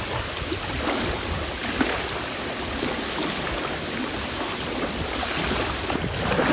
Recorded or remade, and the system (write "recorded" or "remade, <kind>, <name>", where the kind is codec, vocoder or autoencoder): recorded